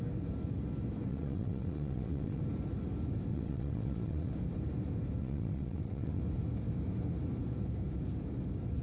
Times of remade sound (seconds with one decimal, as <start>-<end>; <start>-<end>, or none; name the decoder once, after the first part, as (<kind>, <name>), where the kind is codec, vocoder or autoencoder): 1.1-2.4 (vocoder, WaveNeXt); 3.3-4.3; 5.2-6.2